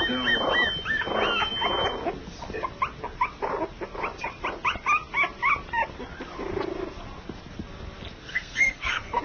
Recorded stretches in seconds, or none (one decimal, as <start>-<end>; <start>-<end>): 0.0-8.3